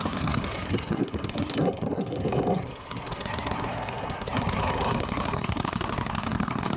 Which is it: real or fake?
fake